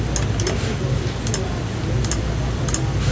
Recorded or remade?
recorded